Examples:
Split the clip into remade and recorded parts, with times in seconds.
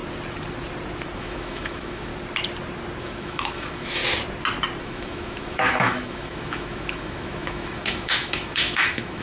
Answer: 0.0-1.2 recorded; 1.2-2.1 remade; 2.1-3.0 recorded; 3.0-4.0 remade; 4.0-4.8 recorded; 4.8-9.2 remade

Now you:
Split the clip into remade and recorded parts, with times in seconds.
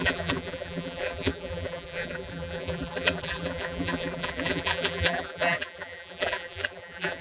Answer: 0.0-7.2 remade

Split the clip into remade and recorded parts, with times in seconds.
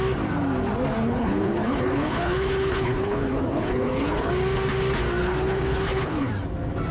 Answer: 0.0-1.0 recorded; 1.0-4.3 remade; 4.3-5.2 recorded; 5.2-6.3 remade; 6.3-6.9 recorded